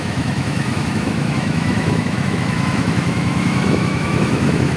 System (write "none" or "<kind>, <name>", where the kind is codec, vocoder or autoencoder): autoencoder, DAC-VAE